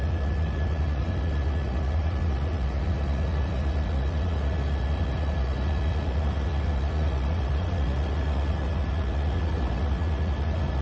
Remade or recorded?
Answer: remade